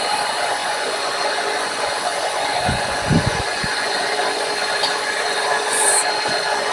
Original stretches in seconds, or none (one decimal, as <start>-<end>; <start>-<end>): none